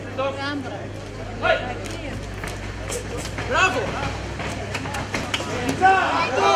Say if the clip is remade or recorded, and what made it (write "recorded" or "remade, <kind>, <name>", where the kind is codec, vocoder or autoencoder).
recorded